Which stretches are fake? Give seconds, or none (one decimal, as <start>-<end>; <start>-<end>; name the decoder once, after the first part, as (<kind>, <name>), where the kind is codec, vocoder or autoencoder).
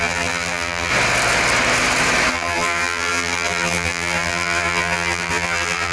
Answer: 0.0-0.9 (vocoder, BigVGAN v2); 2.3-5.9